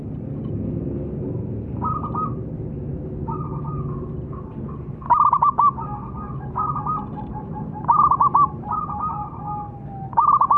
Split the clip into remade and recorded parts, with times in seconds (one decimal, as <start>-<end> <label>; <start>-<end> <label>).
0.0-10.6 recorded